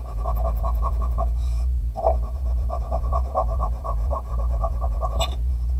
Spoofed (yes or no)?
yes